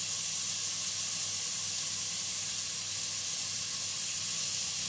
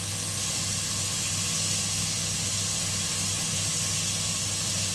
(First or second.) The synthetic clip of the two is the first